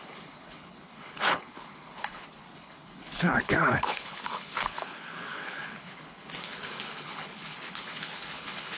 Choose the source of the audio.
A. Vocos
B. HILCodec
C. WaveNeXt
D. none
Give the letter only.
B